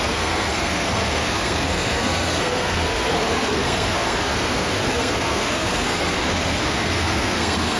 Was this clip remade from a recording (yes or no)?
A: yes